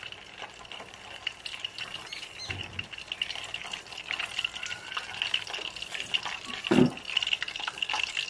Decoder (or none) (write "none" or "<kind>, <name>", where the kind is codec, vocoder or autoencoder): none